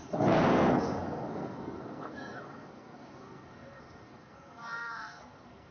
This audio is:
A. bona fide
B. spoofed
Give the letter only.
B